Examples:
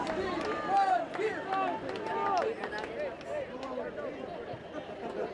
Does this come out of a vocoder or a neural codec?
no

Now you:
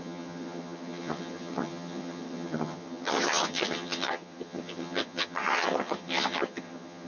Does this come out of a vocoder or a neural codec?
yes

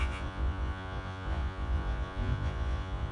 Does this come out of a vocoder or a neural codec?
yes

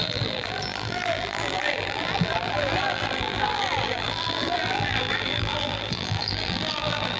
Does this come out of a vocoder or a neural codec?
yes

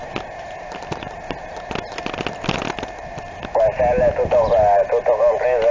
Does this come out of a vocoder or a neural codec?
no